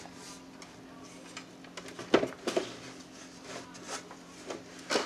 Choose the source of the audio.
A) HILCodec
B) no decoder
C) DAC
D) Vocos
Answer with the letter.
B